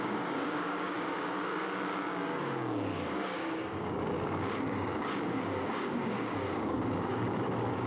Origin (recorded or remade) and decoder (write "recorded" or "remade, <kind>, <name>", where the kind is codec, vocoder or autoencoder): remade, codec, DAC